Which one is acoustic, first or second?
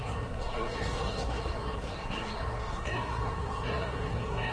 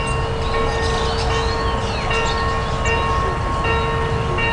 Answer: second